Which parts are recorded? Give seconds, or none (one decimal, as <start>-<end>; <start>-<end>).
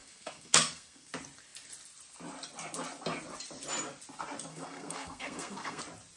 1.1-4.5; 5.8-6.2